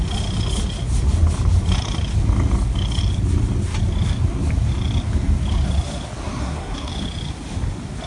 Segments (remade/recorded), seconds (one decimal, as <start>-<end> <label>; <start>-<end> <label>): 0.0-6.4 recorded; 6.4-6.9 remade; 6.9-8.1 recorded